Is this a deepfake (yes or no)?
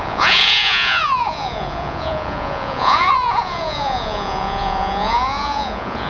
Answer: yes